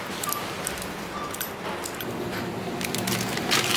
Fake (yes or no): no